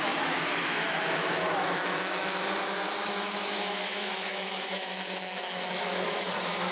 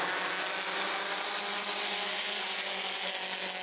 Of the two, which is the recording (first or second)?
second